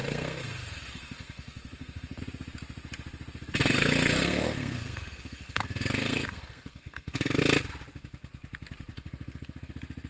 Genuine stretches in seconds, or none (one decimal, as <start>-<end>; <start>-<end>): 2.2-3.6; 7.4-8.9; 9.7-10.1